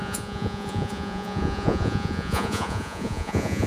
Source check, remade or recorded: remade